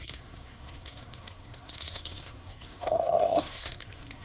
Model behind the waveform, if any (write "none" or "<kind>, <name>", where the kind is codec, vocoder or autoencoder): codec, SNAC